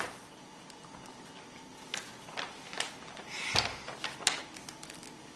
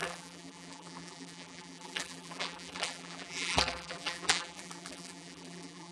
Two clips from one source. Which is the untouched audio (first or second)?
first